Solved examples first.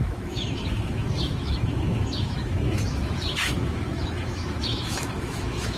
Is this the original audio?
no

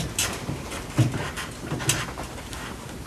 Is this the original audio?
yes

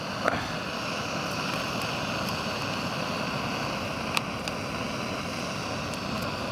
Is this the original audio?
yes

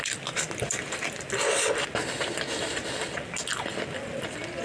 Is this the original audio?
yes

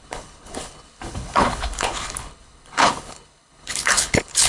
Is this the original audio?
no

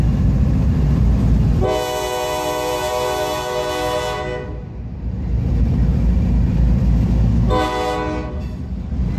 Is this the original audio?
yes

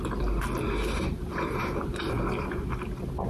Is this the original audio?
yes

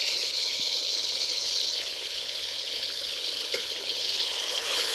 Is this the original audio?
no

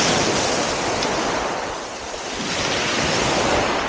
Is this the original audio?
yes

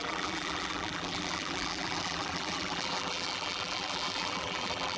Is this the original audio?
no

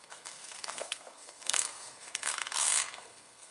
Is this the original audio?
no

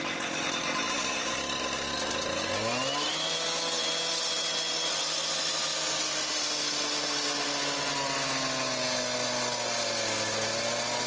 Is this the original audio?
yes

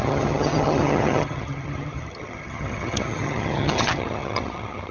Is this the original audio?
no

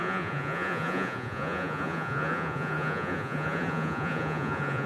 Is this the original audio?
no